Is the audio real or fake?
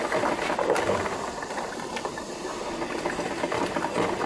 real